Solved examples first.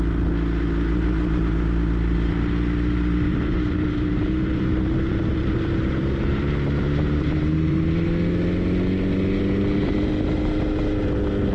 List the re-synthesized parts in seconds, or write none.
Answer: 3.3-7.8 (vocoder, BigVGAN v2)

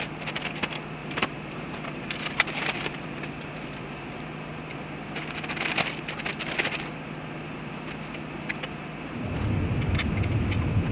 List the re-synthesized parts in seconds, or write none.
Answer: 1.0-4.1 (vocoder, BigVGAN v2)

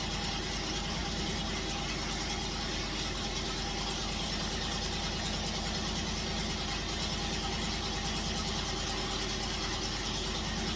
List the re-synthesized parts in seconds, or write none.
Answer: 1.0-1.5 (vocoder, BigVGAN v2); 4.0-5.0